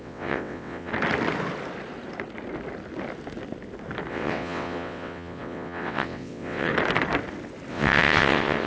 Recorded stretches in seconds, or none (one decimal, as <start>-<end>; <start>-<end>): 0.9-4.1; 6.7-7.7